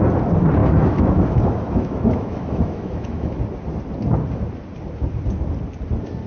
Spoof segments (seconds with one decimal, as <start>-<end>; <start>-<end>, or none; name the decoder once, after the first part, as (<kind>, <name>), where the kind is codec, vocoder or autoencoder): 0.6-3.4 (autoencoder, DAC-VAE)